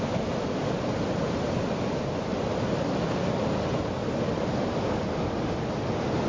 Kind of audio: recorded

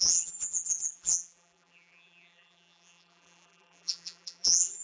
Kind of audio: remade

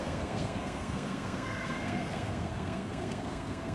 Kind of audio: remade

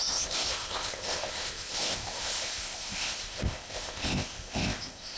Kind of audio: remade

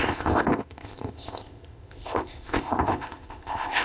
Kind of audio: remade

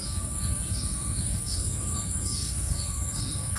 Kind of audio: remade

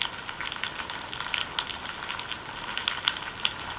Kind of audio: recorded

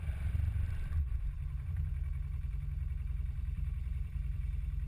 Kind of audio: remade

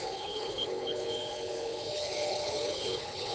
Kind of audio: remade